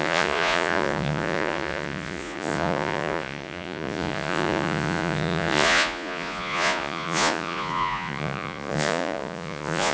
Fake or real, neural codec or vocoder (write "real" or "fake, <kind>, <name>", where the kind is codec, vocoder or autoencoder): fake, vocoder, Vocos